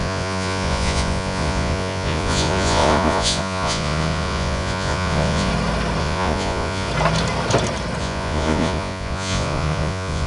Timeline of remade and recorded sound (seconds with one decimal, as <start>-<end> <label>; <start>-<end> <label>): 0.0-5.5 remade; 5.5-6.0 recorded; 6.0-6.9 remade; 6.9-8.0 recorded; 8.0-10.3 remade